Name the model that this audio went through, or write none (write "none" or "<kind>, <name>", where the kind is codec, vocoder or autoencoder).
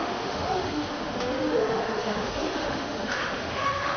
autoencoder, DAC-VAE